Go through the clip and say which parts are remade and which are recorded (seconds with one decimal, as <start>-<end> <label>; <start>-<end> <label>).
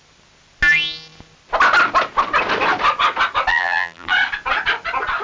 0.0-3.5 recorded; 3.5-4.1 remade; 4.1-5.2 recorded